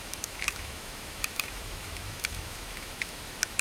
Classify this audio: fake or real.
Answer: fake